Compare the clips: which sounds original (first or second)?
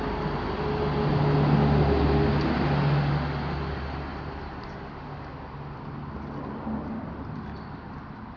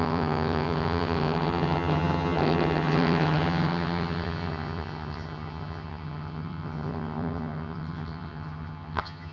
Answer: first